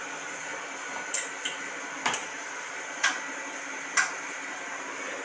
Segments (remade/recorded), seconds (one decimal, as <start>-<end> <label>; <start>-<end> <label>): 0.0-2.2 recorded; 2.2-2.7 remade; 2.7-5.2 recorded